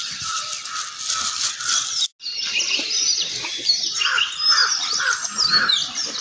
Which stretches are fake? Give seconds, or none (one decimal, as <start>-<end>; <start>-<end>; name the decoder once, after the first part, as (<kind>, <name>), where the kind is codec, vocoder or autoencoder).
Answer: 0.0-0.5 (vocoder, BigVGAN v2); 2.5-6.2